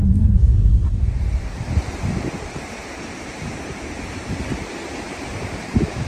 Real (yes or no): no